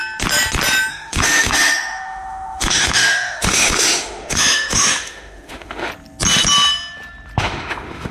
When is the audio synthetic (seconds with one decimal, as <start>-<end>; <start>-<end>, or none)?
0.9-5.9; 7.4-8.1